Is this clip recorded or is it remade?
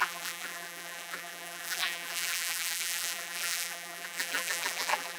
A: remade